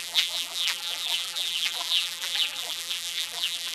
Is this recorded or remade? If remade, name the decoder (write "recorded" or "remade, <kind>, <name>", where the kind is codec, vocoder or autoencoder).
remade, vocoder, BigVGAN v2